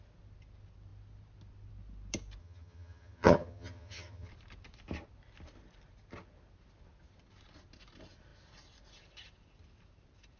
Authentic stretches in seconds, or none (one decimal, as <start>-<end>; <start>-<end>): 0.0-2.4; 4.3-10.4